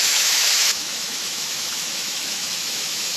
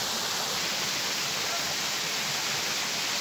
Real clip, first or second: second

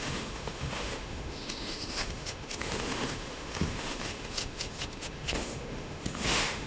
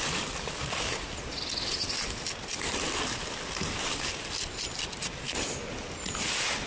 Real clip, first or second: second